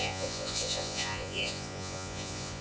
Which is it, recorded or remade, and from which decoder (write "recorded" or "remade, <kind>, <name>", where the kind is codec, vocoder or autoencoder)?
remade, vocoder, Vocos